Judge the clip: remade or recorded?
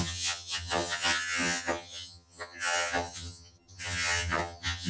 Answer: remade